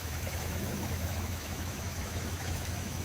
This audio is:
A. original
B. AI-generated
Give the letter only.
B